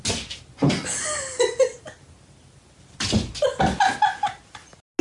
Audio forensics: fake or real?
real